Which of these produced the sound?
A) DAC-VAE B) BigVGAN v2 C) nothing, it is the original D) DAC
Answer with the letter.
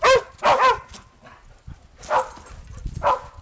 C